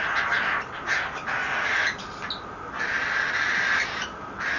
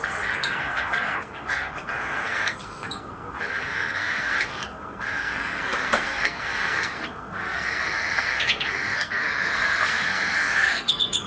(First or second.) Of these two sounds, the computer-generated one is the second